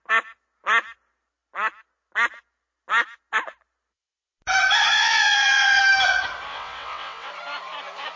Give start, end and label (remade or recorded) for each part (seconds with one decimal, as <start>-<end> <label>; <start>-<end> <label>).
0.0-4.9 recorded; 4.9-5.8 remade; 5.8-6.5 recorded; 6.5-7.3 remade; 7.3-8.2 recorded